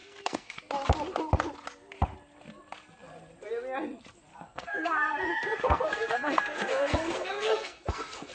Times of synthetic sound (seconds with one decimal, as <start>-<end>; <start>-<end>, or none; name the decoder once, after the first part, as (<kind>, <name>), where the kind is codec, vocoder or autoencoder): 0.0-0.6 (codec, SNAC); 4.3-8.3